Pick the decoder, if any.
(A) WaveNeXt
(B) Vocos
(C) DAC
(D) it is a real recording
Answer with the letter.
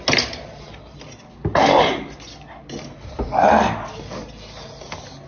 D